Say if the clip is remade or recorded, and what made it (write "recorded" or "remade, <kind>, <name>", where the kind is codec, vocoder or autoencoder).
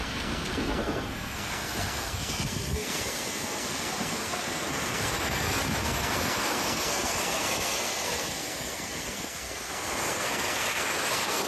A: remade, codec, SNAC